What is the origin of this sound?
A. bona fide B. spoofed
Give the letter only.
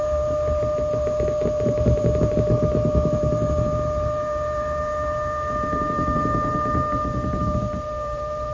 B